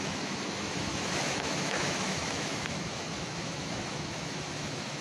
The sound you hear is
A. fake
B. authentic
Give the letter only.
A